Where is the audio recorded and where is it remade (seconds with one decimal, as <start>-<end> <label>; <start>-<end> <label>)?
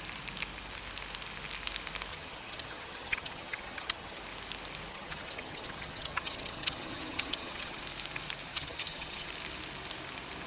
0.0-2.1 recorded; 2.1-4.2 remade; 4.2-4.9 recorded; 4.9-7.8 remade; 7.8-8.5 recorded; 8.5-9.3 remade; 9.3-10.5 recorded